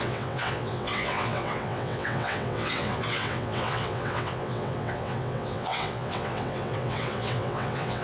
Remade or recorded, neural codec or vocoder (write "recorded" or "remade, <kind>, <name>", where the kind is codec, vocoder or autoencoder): remade, vocoder, WaveNeXt